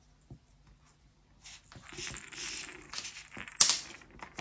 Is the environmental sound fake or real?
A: real